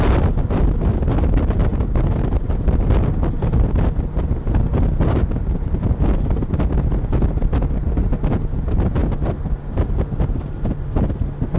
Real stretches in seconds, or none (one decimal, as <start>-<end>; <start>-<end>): 0.0-11.6